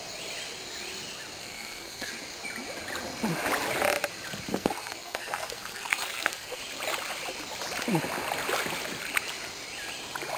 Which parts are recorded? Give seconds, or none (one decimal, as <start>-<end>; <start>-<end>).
0.0-1.4; 2.1-4.5; 6.6-10.4

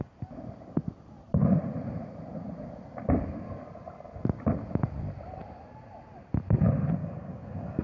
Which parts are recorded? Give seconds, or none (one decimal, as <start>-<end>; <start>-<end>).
0.0-7.0